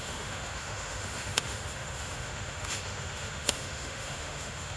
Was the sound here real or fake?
fake